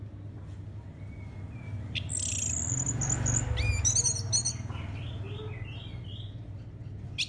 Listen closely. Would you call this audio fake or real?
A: real